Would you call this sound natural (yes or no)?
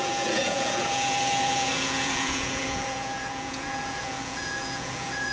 no